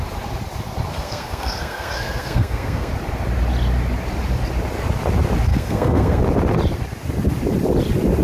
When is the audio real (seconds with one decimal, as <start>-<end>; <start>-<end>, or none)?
0.0-0.9; 2.9-5.5; 6.2-8.2